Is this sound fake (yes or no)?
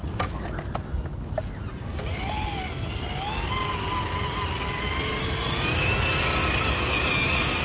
no